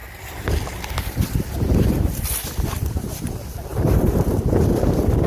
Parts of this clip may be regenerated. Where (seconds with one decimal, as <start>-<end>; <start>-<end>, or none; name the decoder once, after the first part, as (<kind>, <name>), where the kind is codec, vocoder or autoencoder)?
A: 0.0-3.2 (vocoder, BigVGAN v2); 3.7-4.8